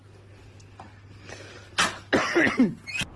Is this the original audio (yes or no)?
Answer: yes